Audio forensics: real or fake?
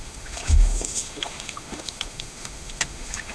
fake